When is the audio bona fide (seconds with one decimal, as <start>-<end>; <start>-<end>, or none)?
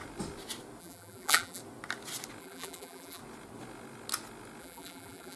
0.0-0.8; 1.6-2.4; 3.2-4.6